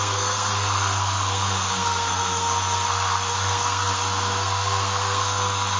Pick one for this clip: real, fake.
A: fake